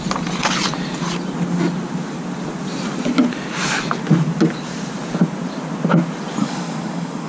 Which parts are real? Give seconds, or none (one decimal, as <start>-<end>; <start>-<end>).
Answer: 0.0-6.4